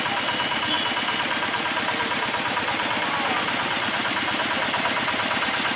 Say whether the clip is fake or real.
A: real